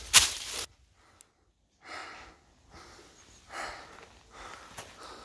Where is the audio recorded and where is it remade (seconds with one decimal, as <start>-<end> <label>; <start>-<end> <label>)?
0.0-5.2 recorded